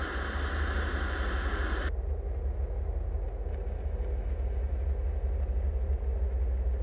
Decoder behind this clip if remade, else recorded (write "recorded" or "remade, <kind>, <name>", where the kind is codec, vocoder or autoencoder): recorded